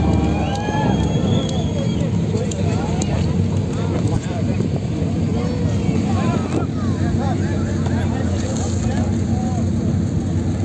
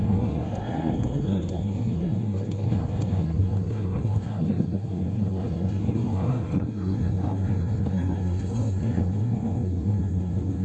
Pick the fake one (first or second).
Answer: second